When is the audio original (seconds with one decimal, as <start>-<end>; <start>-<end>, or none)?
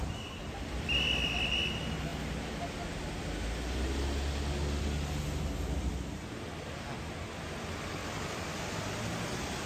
0.0-8.0; 9.0-9.7